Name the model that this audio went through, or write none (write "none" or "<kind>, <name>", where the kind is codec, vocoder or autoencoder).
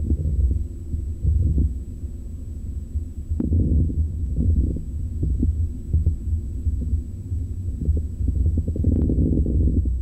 none